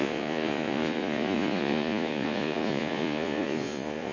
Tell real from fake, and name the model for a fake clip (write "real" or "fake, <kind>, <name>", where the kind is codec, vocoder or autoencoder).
fake, vocoder, Vocos